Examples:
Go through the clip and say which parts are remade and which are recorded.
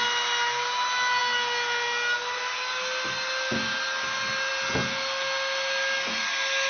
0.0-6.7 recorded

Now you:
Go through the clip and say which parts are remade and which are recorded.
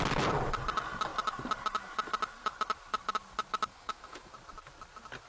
0.0-3.7 recorded; 3.7-4.3 remade; 4.3-5.3 recorded